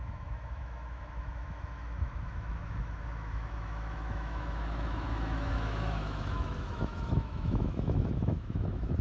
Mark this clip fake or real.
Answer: fake